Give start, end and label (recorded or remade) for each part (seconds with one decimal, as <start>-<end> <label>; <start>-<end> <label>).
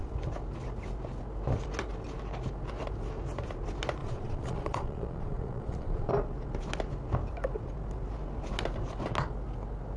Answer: 0.0-4.0 recorded; 4.0-6.1 remade; 6.1-10.0 recorded